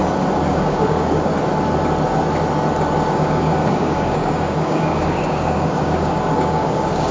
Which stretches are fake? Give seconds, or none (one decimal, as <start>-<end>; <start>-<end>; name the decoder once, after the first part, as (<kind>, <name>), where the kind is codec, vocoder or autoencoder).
0.5-1.3 (codec, DAC); 3.1-7.1